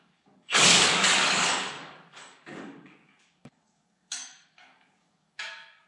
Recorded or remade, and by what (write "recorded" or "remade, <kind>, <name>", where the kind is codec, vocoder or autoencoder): remade, codec, DAC